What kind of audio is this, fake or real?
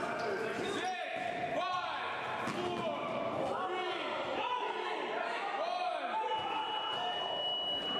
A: real